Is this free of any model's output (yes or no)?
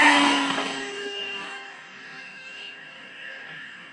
no